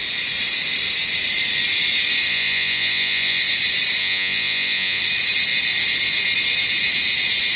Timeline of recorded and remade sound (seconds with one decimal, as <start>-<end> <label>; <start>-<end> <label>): 0.0-2.3 recorded; 2.3-3.4 remade; 3.4-4.0 recorded; 4.0-5.0 remade; 5.0-7.6 recorded